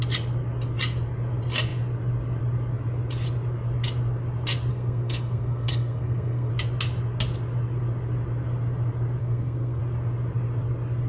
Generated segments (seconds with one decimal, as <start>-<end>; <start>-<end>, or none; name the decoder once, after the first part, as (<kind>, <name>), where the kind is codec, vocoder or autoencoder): 4.7-6.5 (codec, SNAC); 9.2-9.8